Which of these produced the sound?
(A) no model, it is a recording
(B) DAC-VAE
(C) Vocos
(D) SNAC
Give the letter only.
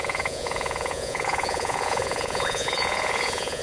C